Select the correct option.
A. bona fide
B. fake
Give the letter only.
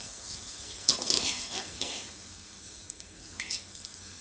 B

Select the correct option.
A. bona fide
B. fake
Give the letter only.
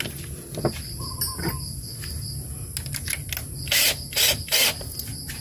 A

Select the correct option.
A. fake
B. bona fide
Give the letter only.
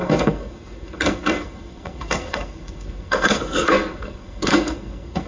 A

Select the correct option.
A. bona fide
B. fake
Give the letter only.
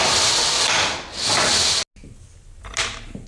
A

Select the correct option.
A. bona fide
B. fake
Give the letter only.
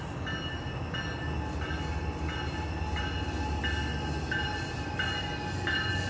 A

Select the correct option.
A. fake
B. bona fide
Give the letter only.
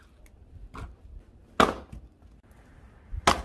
B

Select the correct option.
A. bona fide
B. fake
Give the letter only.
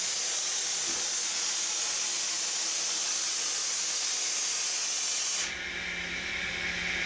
A